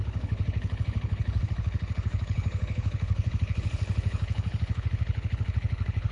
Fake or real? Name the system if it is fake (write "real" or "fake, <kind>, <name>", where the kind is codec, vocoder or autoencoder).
fake, codec, HILCodec